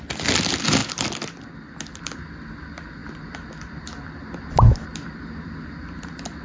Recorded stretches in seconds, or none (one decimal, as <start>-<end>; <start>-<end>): 0.0-6.4